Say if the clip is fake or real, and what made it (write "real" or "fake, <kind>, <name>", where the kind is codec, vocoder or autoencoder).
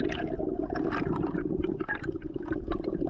real